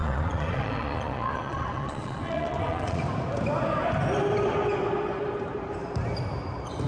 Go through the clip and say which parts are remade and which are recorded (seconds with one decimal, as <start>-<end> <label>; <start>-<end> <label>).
0.0-3.0 remade; 3.0-6.9 recorded